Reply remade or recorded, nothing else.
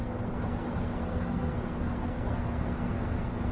remade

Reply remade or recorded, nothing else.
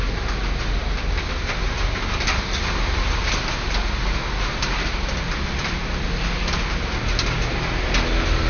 recorded